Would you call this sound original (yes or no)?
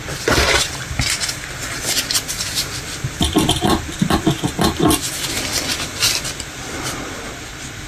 yes